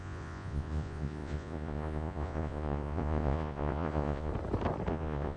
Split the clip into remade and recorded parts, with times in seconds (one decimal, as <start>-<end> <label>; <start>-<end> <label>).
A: 0.0-4.3 remade; 4.3-4.9 recorded; 4.9-5.4 remade